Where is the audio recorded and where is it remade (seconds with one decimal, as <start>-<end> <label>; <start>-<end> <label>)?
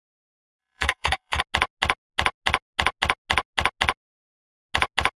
0.0-0.6 recorded; 0.6-1.4 remade; 1.4-5.2 recorded